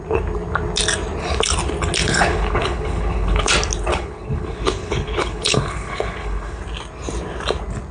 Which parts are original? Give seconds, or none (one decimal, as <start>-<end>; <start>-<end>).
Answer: 0.0-2.0; 3.5-3.9; 6.6-7.9